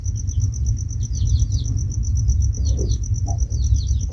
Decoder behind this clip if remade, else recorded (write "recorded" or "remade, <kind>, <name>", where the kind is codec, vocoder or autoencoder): recorded